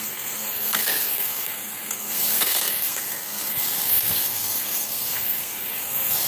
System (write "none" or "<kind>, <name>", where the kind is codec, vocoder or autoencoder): codec, SNAC